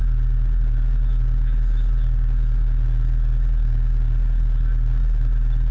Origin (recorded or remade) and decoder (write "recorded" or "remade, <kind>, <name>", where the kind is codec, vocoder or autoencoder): recorded